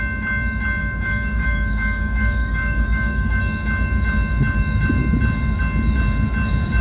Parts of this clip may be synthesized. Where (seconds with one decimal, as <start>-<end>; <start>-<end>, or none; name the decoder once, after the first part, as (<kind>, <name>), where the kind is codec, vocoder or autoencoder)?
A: 0.8-3.4 (codec, DAC)